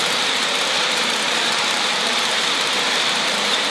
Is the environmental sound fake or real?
fake